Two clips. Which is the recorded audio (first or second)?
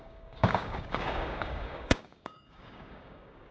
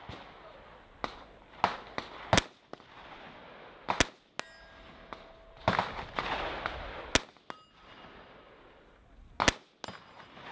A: second